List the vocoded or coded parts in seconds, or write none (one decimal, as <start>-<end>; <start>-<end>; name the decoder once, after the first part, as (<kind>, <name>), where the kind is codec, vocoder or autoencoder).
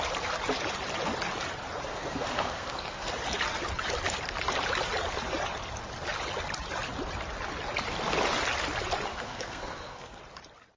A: 1.9-3.1 (codec, SNAC); 9.1-10.2